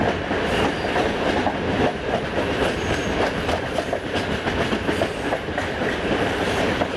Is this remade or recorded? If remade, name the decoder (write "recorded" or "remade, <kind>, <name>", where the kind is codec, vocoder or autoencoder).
recorded